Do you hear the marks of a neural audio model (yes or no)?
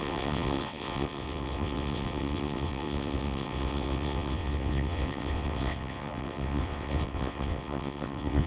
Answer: yes